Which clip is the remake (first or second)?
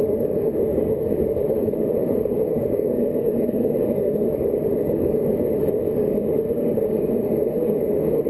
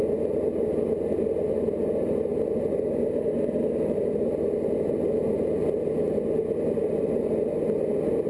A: first